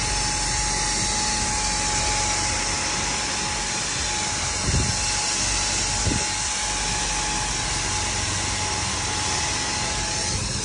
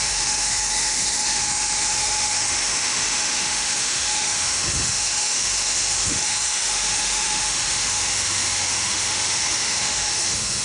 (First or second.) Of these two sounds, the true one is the first